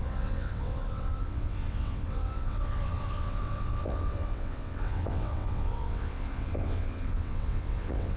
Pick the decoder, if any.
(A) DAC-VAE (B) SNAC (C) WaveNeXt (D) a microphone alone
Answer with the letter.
C